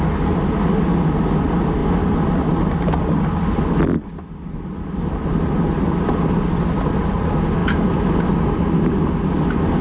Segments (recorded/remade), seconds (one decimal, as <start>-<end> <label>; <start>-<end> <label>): 0.0-9.8 recorded